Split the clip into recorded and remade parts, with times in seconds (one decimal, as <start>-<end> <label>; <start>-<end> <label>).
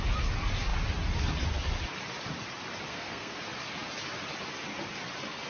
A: 0.0-2.9 recorded; 2.9-3.4 remade; 3.4-5.5 recorded